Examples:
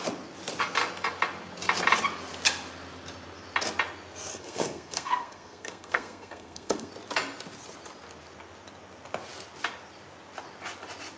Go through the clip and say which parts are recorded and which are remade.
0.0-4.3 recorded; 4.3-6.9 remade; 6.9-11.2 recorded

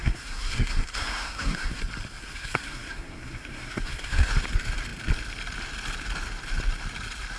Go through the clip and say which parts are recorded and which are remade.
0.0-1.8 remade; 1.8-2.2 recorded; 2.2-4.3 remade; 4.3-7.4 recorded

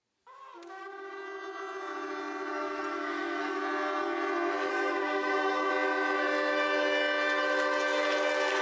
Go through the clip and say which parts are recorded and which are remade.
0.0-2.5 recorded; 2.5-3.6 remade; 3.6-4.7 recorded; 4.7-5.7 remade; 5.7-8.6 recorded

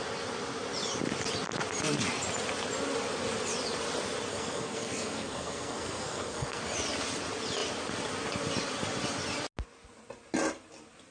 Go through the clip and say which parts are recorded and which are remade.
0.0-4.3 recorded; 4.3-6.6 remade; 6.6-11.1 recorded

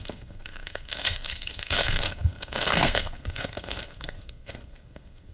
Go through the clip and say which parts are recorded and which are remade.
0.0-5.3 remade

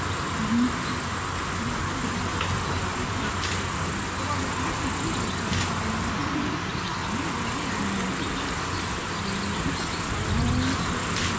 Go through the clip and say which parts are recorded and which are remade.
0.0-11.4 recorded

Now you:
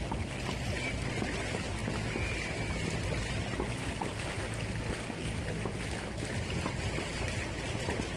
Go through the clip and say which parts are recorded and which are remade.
0.0-8.2 recorded